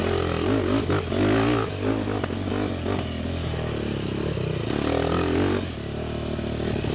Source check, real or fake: real